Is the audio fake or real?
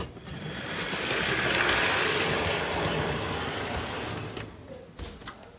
real